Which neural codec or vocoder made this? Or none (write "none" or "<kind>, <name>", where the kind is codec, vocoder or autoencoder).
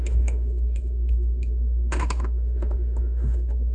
autoencoder, DAC-VAE